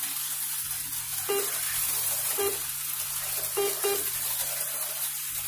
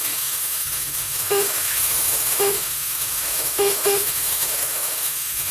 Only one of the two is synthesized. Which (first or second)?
second